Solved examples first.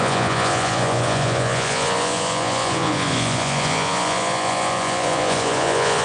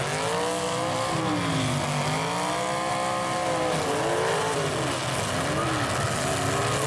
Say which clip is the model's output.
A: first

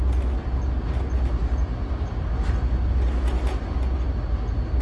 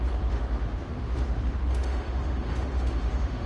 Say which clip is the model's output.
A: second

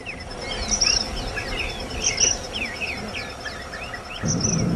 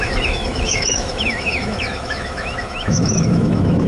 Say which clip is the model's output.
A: second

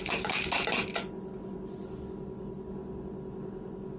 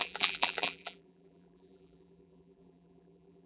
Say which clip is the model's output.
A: second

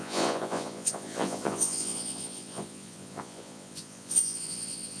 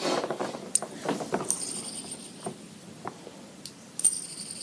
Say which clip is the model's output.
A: first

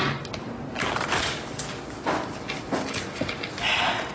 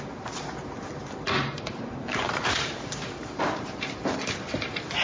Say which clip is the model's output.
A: second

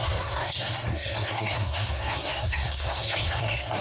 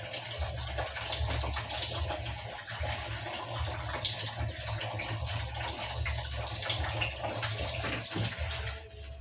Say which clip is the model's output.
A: first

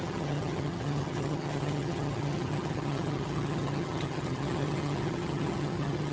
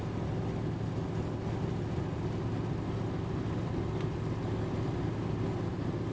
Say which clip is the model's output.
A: first